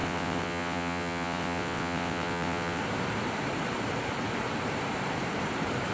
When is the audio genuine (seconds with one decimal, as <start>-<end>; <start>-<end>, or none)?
2.8-5.9